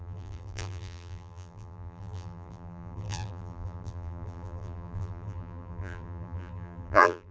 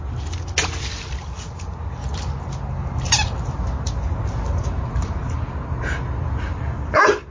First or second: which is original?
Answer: second